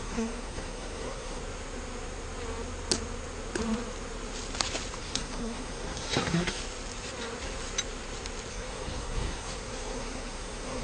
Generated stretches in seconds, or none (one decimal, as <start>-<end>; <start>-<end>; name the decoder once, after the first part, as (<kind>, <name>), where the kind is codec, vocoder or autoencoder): 0.0-1.4 (codec, SNAC); 5.0-6.6; 8.5-10.8